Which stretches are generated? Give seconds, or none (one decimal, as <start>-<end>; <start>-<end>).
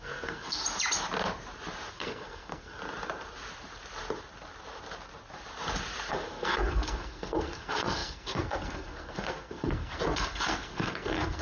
0.0-0.6; 1.9-2.8; 6.1-11.4